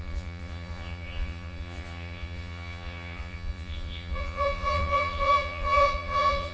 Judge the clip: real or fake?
fake